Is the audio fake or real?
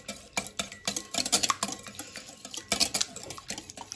real